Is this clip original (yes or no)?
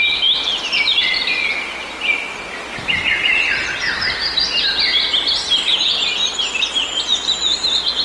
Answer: yes